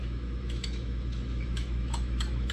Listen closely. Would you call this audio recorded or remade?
remade